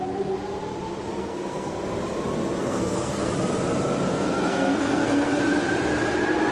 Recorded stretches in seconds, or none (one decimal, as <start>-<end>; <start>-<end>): 0.0-1.1; 1.8-2.6; 3.3-4.1; 5.4-6.5